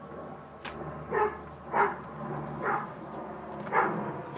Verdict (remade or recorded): recorded